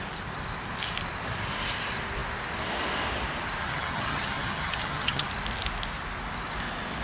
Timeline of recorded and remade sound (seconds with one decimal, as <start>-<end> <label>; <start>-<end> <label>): 0.0-3.6 recorded; 3.6-5.3 remade; 5.3-7.0 recorded